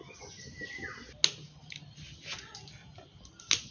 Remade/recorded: recorded